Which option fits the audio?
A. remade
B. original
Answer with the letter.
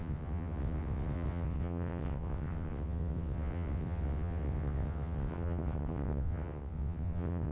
A